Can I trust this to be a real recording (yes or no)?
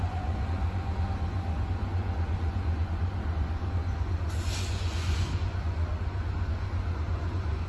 no